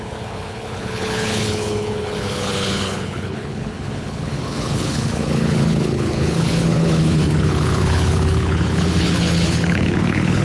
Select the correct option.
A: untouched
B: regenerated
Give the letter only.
B